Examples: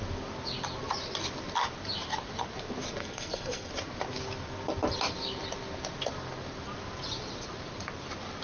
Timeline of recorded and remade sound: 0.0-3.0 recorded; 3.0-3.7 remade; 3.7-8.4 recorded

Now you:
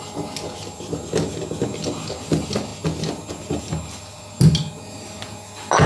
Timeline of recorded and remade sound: 0.0-5.9 recorded

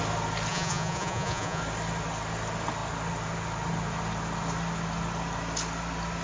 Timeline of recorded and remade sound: 0.0-0.5 recorded; 0.5-1.6 remade; 1.6-6.2 recorded

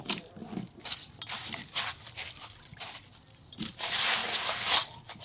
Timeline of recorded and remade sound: 0.0-0.4 remade; 0.4-3.5 recorded; 3.5-4.2 remade; 4.2-5.2 recorded

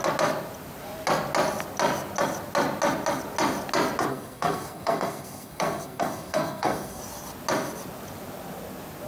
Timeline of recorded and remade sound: 0.0-4.1 recorded; 4.1-7.0 remade; 7.0-9.1 recorded

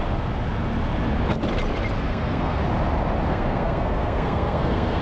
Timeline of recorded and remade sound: 0.0-2.1 recorded; 2.1-2.6 remade; 2.6-3.3 recorded; 3.3-5.0 remade

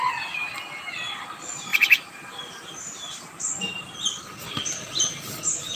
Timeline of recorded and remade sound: 0.0-1.7 recorded; 1.7-3.7 remade; 3.7-5.8 recorded

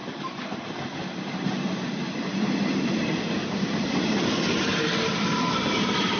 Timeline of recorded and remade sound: 0.0-6.2 recorded